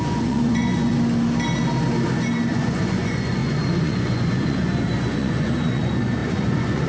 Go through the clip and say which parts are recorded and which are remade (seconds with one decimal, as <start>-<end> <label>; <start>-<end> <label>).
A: 0.0-0.9 remade; 0.9-2.5 recorded; 2.5-6.9 remade